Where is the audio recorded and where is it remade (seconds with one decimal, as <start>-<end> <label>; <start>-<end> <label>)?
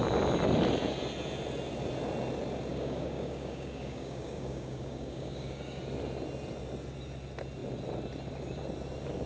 0.0-2.7 recorded; 2.7-5.8 remade; 5.8-9.3 recorded